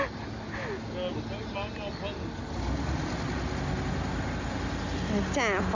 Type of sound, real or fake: real